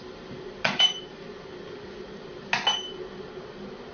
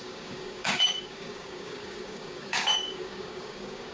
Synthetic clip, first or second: second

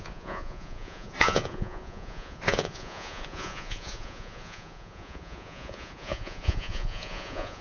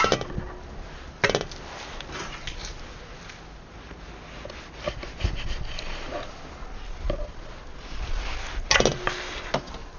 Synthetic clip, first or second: first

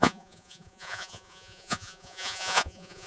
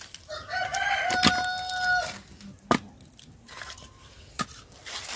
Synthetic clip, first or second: first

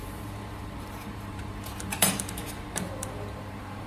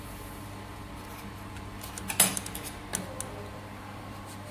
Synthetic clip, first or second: first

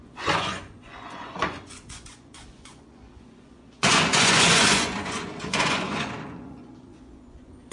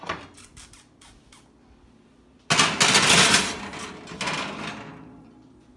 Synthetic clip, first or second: first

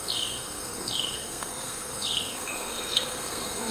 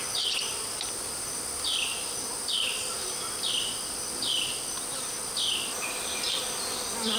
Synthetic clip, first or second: first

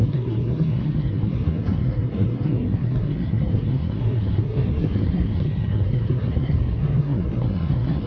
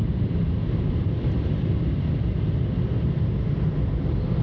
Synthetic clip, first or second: first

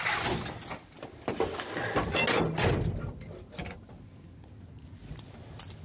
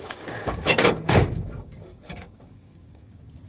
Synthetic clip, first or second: second